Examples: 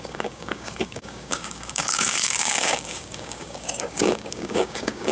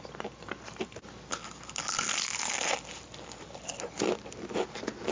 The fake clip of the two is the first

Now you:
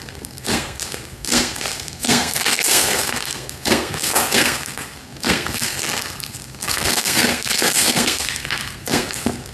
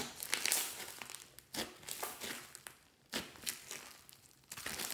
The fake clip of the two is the first